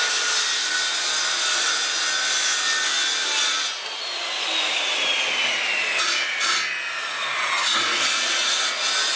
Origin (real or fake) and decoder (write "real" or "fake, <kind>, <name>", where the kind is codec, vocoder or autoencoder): real